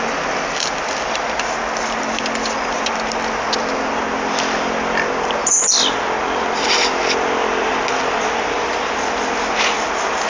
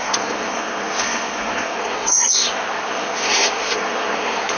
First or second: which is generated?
second